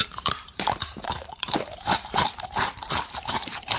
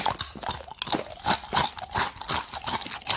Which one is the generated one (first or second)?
first